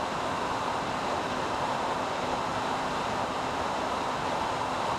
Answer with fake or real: fake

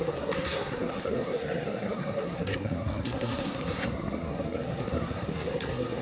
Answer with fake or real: fake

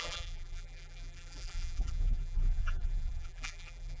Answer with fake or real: fake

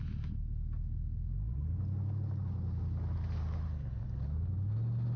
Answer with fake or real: real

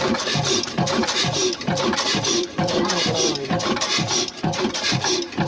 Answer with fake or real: fake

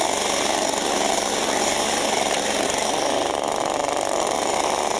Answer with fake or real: real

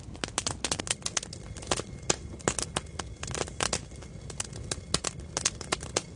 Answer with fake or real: real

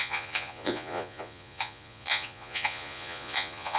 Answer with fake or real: fake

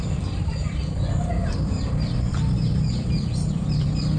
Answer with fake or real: fake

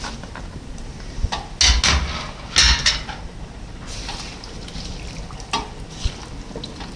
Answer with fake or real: real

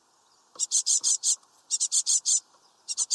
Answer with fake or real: fake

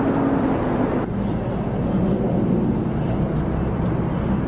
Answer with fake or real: real